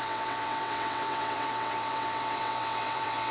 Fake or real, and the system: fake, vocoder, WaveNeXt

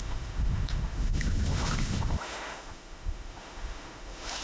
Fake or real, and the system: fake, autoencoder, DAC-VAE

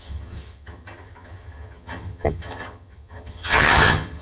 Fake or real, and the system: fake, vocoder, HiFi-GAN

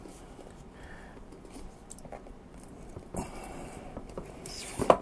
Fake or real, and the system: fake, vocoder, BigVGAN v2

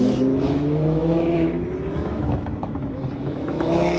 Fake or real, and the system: fake, autoencoder, DAC-VAE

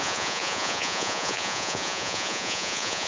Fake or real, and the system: fake, vocoder, Vocos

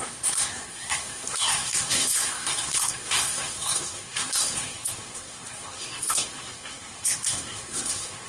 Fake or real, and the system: fake, codec, SNAC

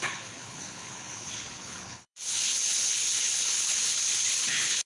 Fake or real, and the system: fake, codec, HILCodec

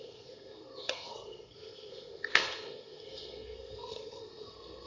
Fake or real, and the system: fake, codec, SNAC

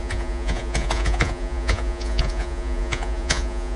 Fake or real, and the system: fake, vocoder, Vocos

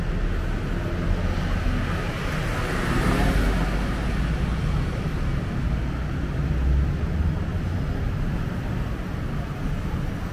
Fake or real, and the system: real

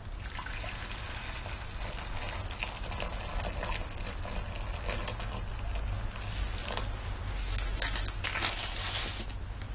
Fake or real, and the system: real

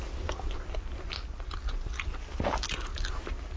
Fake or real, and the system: real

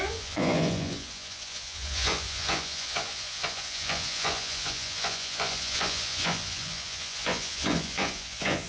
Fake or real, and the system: fake, vocoder, Vocos